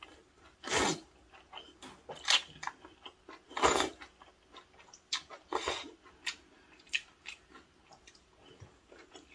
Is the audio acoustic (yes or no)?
yes